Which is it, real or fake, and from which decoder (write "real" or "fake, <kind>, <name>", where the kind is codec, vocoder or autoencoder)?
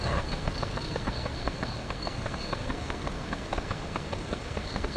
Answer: fake, codec, SNAC